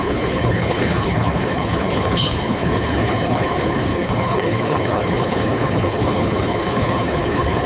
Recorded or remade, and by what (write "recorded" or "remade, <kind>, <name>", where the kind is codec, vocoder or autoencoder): remade, codec, HILCodec